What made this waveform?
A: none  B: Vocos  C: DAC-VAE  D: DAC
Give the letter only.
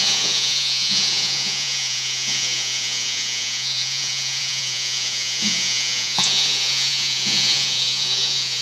B